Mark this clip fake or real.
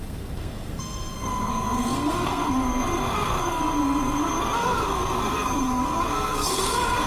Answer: fake